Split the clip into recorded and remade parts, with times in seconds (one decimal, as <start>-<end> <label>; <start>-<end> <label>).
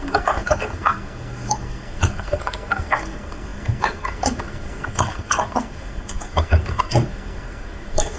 0.0-8.2 remade